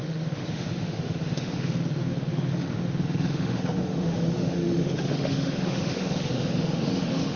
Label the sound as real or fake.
fake